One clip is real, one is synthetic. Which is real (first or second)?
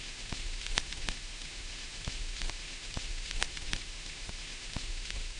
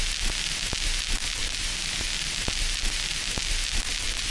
second